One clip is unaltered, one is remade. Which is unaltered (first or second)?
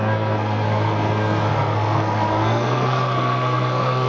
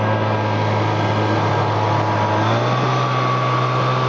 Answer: second